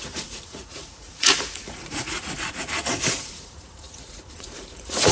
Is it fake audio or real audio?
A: fake